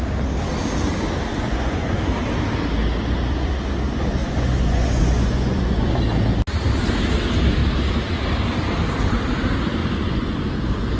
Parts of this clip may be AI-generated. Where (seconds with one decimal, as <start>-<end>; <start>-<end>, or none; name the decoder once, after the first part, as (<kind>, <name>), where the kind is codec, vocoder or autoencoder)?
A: 1.3-2.0 (vocoder, Vocos); 4.2-6.0; 9.8-10.5